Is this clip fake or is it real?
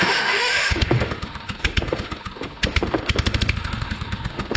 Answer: fake